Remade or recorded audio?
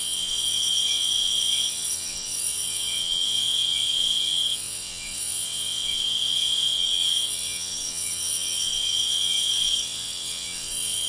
remade